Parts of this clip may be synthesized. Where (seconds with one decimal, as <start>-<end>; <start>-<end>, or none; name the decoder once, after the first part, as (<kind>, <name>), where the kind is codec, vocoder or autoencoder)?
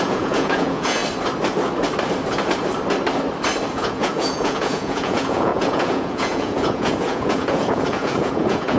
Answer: 0.0-1.0 (vocoder, Vocos); 3.7-8.8